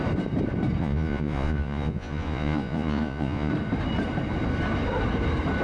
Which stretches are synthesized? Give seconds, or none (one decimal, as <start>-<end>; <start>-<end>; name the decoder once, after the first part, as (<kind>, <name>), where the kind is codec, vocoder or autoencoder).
0.8-3.5 (vocoder, Vocos)